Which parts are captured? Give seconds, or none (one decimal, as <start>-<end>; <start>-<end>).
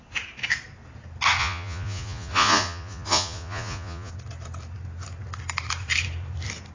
0.0-1.4; 4.1-6.7